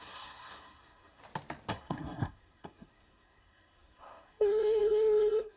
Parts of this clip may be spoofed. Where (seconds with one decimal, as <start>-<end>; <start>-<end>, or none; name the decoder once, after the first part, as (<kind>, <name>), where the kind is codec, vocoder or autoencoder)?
0.0-1.2 (codec, SNAC); 1.7-5.6